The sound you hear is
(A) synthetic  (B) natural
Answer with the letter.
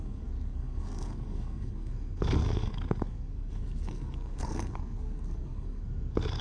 A